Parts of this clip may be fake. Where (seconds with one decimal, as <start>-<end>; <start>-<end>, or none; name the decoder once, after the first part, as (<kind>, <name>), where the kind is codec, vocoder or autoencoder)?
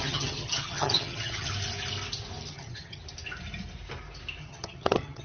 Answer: 0.0-1.5 (vocoder, HiFi-GAN); 2.5-3.0; 4.4-5.2